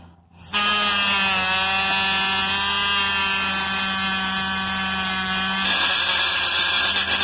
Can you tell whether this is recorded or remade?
recorded